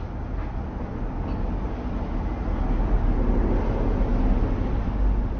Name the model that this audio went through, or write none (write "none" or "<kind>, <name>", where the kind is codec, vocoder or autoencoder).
none